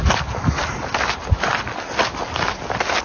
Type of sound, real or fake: real